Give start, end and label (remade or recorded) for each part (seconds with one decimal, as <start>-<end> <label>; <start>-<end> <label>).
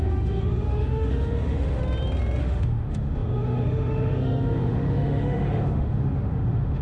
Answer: 0.0-1.8 remade; 1.8-2.4 recorded; 2.4-6.8 remade